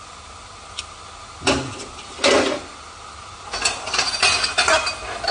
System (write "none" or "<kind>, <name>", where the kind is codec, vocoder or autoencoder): none